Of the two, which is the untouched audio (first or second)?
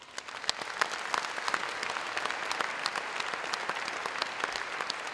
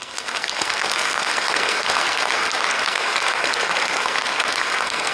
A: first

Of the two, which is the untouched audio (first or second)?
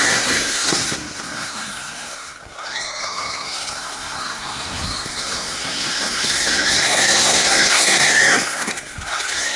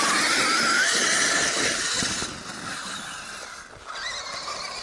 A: second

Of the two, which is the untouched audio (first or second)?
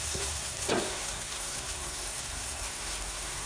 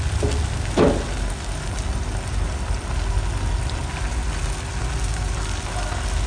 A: second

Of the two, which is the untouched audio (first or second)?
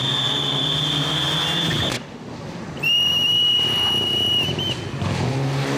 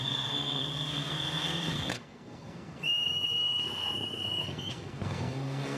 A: first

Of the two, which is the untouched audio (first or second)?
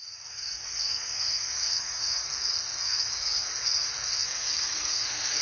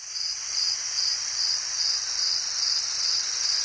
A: second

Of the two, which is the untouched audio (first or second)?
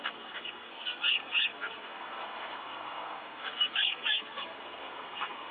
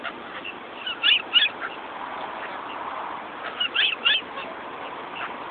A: second